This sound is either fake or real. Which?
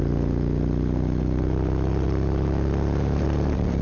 real